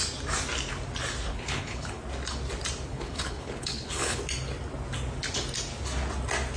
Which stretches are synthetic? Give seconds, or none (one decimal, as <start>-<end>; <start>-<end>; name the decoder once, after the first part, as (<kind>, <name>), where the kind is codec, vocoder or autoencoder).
1.3-2.0 (codec, HILCodec); 2.9-4.2